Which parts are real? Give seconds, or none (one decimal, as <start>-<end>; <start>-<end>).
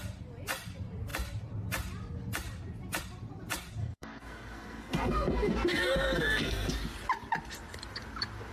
0.0-3.8; 6.7-8.5